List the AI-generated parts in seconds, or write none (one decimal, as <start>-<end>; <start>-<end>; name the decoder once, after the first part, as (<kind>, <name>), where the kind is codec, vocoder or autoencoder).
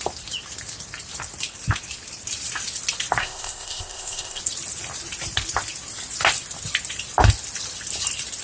3.2-4.4 (codec, ZipCodec)